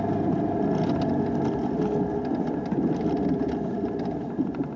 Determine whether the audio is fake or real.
real